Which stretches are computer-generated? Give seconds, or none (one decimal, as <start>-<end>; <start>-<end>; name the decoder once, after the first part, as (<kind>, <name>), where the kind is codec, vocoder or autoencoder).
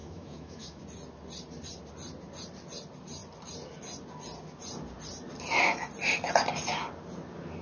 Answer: 0.0-0.8 (autoencoder, DAC-VAE)